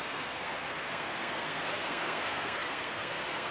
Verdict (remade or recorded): remade